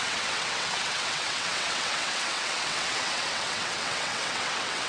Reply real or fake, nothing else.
fake